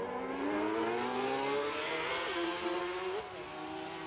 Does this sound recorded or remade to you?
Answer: recorded